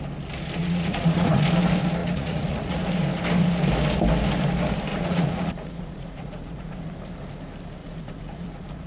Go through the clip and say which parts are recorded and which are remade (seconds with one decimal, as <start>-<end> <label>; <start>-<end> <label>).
0.0-0.6 recorded; 0.6-1.4 remade; 1.4-2.0 recorded; 2.0-2.8 remade; 2.8-4.9 recorded; 4.9-6.9 remade; 6.9-7.8 recorded; 7.8-8.9 remade